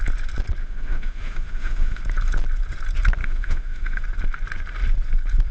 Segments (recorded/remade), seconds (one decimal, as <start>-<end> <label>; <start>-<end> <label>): 0.0-0.6 recorded; 0.6-2.0 remade; 2.0-3.2 recorded; 3.2-4.0 remade; 4.0-5.5 recorded